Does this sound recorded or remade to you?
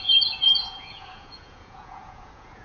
remade